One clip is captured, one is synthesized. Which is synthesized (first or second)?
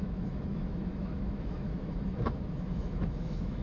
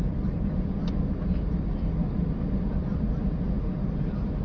first